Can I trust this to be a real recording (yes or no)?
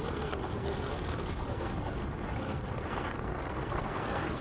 no